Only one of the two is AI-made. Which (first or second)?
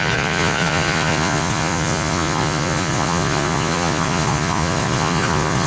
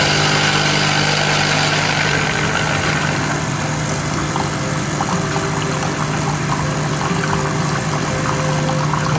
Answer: first